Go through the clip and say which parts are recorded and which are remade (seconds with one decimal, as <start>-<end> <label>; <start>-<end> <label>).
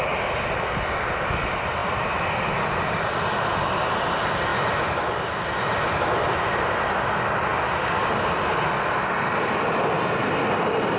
0.0-11.0 recorded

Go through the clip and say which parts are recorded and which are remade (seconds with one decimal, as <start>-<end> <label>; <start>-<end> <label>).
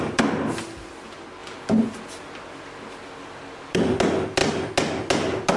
0.0-5.6 recorded